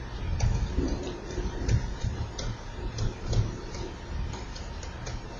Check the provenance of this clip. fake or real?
fake